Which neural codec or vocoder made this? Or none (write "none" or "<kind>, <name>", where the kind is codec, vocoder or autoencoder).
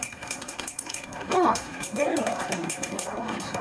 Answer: codec, SNAC